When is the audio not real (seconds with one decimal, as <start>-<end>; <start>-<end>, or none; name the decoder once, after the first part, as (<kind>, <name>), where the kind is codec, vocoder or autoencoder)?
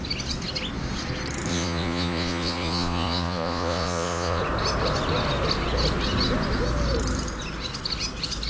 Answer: 1.5-4.4 (vocoder, Vocos)